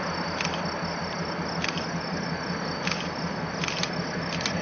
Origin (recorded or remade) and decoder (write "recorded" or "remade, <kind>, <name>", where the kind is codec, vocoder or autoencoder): recorded